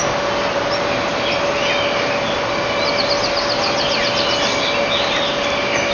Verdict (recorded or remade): recorded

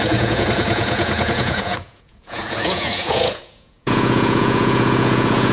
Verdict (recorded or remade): remade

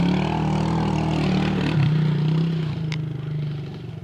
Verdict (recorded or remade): recorded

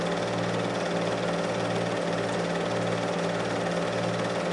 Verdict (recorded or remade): recorded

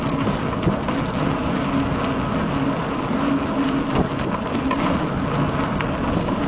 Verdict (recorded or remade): recorded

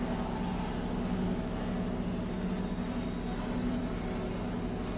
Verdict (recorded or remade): recorded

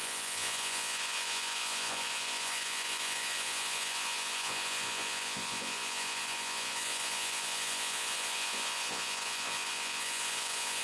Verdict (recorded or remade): remade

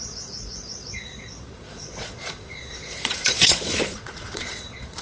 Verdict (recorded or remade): remade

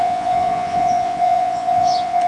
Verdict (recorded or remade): remade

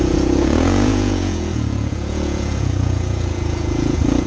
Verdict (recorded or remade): remade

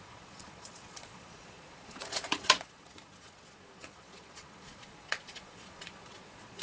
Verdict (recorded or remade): remade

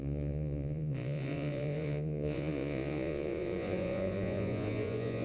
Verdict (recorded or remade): remade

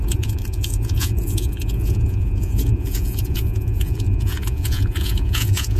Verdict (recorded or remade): remade